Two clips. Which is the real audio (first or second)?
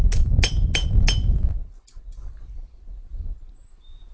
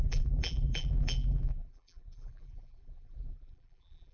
first